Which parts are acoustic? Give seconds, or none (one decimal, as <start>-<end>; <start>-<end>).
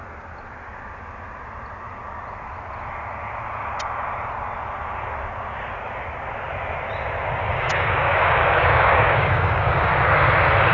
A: 0.0-7.5; 9.9-10.7